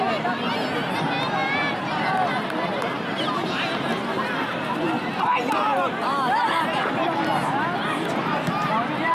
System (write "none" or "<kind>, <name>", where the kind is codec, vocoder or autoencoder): none